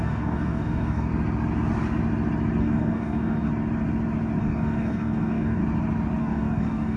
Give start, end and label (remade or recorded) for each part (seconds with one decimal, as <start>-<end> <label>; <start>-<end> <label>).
0.0-1.1 remade; 1.1-2.6 recorded; 2.6-3.5 remade; 3.5-4.4 recorded; 4.4-5.6 remade; 5.6-6.2 recorded; 6.2-7.0 remade